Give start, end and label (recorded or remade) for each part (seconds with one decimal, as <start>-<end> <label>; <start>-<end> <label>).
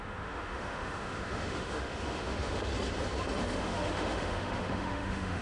0.0-2.7 remade; 2.7-3.4 recorded; 3.4-5.4 remade